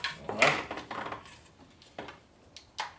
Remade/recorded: recorded